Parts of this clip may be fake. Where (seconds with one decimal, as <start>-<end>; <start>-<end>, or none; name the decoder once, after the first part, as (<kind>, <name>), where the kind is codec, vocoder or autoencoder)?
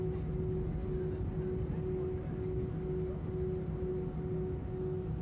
none